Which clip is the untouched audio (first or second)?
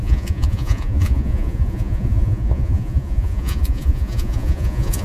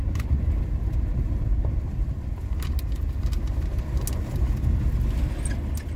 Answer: second